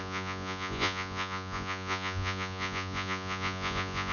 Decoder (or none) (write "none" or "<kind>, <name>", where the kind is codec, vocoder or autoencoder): vocoder, Vocos